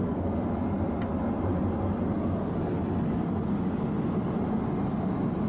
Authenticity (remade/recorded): recorded